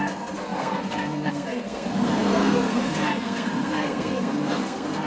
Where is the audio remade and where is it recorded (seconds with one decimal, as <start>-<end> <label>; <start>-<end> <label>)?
0.0-5.1 remade